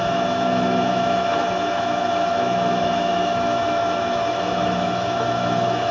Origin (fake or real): fake